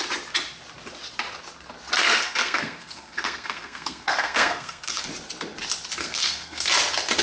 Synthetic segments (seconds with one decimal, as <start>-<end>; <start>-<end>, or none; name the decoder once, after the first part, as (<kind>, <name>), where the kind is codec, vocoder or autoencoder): 2.0-5.1 (codec, SNAC); 6.0-6.7